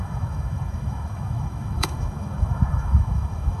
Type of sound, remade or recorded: remade